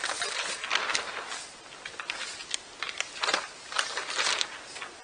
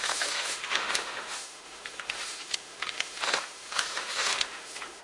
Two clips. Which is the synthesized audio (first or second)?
second